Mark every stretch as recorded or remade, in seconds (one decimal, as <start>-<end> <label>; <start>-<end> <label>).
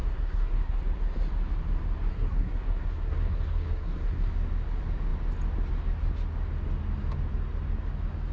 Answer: 0.0-0.8 remade; 0.8-2.1 recorded; 2.1-4.3 remade; 4.3-8.3 recorded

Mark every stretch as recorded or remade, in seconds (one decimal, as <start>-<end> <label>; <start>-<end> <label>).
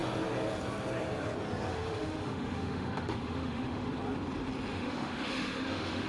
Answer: 0.0-1.7 recorded; 1.7-3.9 remade; 3.9-4.7 recorded; 4.7-6.1 remade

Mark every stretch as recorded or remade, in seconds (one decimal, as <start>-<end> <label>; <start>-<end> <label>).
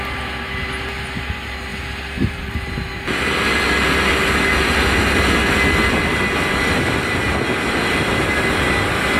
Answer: 0.0-9.2 recorded